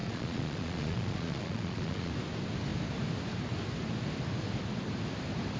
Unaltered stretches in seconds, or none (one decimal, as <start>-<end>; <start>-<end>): 2.1-5.6